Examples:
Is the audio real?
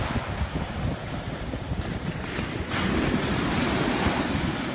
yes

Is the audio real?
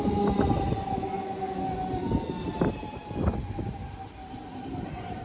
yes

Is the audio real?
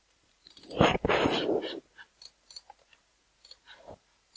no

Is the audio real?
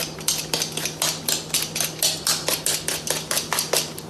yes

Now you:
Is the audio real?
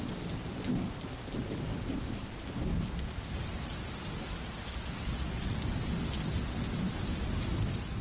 yes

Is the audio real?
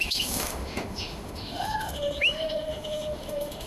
no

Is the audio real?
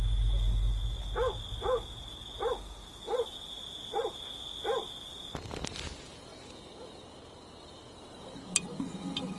yes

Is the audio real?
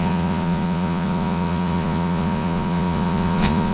no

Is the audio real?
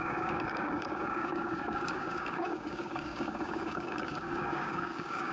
no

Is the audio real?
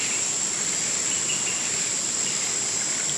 yes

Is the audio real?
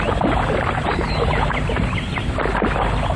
yes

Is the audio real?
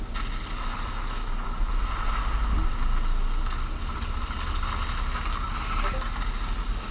yes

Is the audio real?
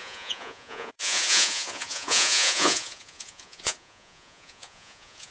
no